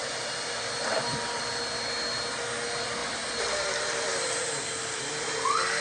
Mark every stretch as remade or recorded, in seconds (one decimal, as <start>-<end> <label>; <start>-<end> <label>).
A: 0.0-1.6 remade; 1.6-3.0 recorded; 3.0-5.1 remade; 5.1-5.8 recorded